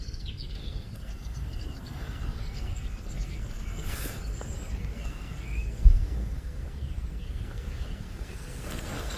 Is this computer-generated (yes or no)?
yes